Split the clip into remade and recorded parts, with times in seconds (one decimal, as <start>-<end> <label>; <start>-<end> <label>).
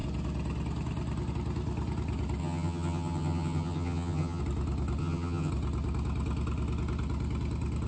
0.0-2.4 recorded; 2.4-4.4 remade; 4.4-5.0 recorded; 5.0-5.5 remade; 5.5-7.9 recorded